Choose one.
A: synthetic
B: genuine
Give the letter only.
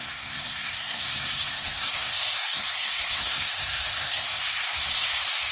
A